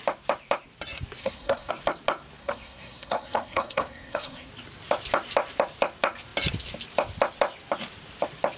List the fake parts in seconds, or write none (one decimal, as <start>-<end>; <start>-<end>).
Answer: 1.2-1.7; 2.4-4.5